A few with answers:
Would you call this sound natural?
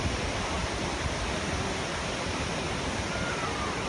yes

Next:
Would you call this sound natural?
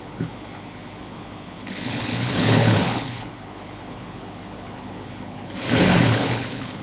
no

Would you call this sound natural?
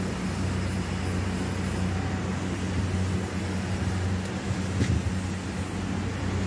yes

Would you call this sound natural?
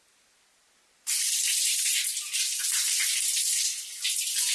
yes